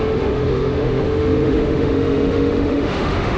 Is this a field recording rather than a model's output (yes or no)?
no